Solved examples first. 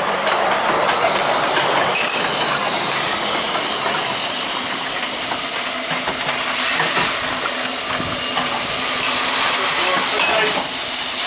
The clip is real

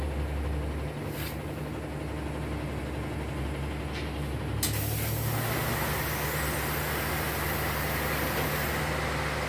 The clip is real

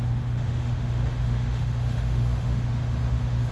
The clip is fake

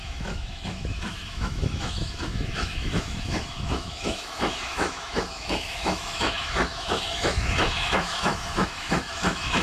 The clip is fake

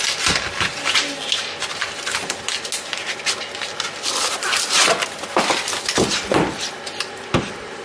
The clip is real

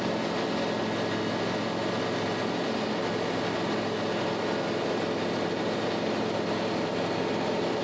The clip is real